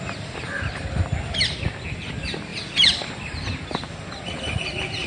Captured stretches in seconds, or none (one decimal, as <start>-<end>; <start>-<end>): 0.0-5.1